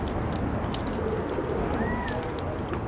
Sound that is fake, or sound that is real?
real